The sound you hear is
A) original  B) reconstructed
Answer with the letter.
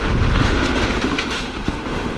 B